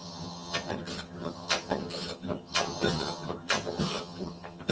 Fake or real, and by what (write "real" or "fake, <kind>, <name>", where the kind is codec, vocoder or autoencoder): fake, vocoder, HiFi-GAN